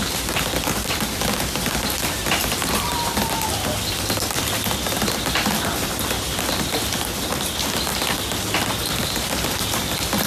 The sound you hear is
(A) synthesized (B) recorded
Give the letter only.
B